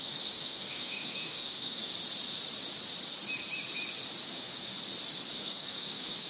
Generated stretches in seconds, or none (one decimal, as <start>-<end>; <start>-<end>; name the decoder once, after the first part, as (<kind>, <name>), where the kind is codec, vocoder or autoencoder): 0.0-1.9 (codec, DAC); 4.3-4.7; 5.3-6.3